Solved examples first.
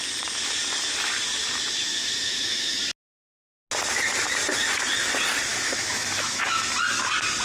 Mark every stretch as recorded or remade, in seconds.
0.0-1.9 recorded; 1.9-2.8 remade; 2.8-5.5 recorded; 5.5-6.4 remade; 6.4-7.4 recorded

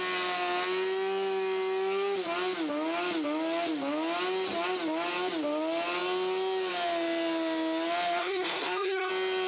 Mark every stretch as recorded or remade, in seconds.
0.0-8.2 recorded; 8.2-9.1 remade; 9.1-9.5 recorded